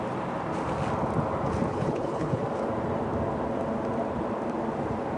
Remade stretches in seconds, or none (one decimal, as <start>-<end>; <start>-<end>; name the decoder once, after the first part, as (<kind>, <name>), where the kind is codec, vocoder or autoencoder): 1.7-2.4 (codec, HILCodec)